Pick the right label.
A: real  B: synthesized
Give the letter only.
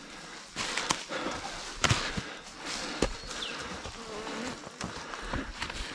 A